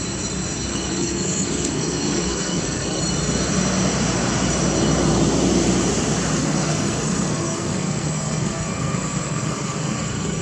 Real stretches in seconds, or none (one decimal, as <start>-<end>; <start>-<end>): 0.0-0.7; 3.0-6.4